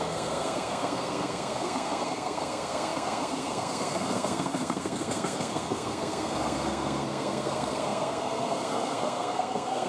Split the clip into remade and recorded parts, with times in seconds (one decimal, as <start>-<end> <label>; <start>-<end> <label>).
0.0-9.9 remade